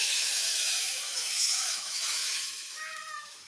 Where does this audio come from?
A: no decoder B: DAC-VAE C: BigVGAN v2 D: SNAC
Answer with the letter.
B